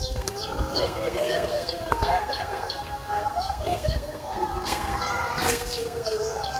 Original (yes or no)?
no